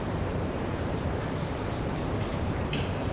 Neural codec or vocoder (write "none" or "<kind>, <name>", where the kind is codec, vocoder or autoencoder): vocoder, BigVGAN v2